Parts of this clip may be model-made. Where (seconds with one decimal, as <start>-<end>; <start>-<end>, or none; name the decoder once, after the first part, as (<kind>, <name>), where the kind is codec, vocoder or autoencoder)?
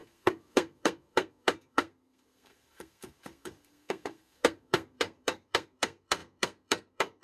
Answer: 0.0-7.2 (codec, SNAC)